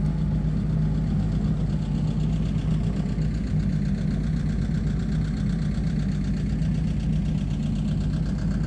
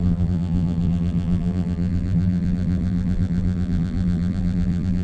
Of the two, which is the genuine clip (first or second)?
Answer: first